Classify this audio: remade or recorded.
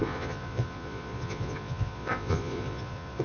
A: remade